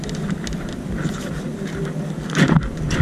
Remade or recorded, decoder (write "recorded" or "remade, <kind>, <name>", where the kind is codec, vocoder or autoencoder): recorded